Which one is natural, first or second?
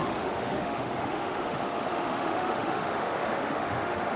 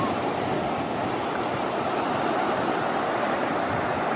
second